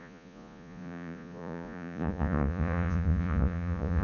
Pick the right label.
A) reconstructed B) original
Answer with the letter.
A